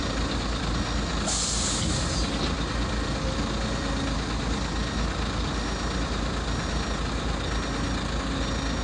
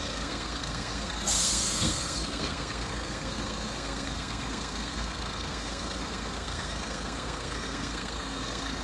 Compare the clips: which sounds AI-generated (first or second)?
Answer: second